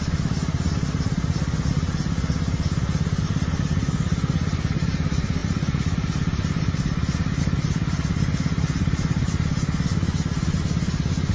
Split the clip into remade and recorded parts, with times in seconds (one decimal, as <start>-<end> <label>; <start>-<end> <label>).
0.0-11.3 recorded